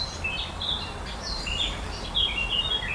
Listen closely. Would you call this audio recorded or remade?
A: recorded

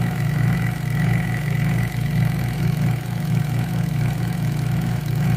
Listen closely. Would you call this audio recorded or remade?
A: remade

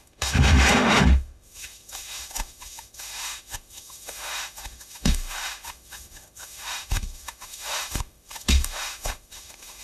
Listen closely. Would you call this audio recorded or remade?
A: remade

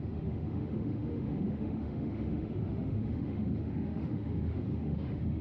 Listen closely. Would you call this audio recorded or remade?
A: remade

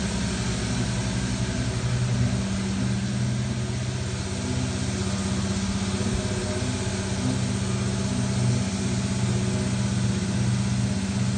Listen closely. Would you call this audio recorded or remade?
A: recorded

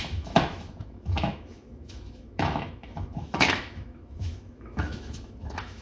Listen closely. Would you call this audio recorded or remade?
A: remade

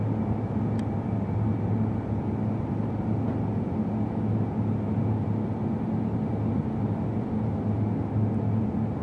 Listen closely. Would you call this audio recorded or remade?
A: recorded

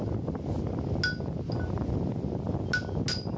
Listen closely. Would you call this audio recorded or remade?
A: recorded